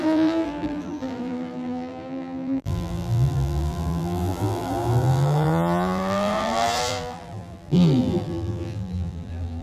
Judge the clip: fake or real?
fake